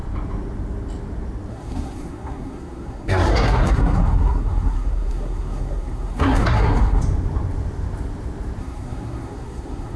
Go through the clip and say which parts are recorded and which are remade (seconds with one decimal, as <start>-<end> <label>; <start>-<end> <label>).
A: 0.0-1.5 recorded; 1.5-7.0 remade; 7.0-8.6 recorded; 8.6-10.0 remade